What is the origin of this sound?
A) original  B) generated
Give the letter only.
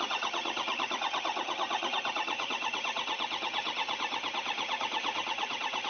B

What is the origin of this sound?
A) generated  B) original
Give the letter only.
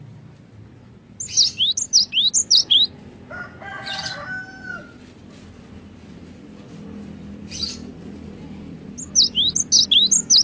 B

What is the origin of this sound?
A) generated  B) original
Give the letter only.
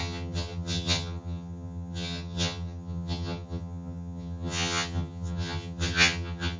A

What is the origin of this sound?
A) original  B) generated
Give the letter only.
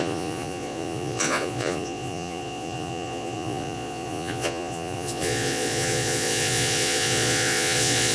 B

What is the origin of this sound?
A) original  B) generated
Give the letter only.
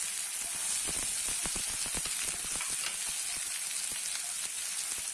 A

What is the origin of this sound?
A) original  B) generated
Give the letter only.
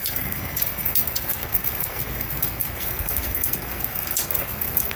B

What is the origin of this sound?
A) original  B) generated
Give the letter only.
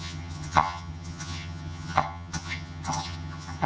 B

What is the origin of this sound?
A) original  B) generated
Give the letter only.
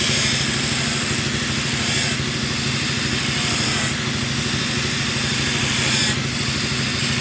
A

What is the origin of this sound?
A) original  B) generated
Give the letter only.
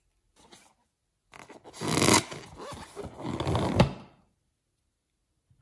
A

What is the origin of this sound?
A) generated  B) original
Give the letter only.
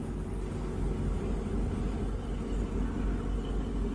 B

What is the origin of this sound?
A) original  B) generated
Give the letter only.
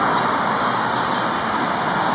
A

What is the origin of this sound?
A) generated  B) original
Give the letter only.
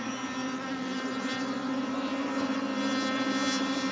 B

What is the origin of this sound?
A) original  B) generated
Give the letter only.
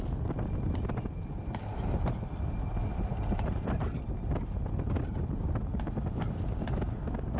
A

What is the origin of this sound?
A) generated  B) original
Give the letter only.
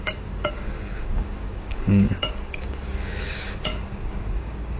A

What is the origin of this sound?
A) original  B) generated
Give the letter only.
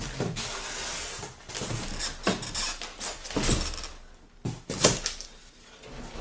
A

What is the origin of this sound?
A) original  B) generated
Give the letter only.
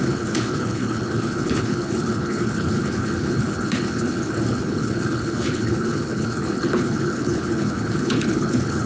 B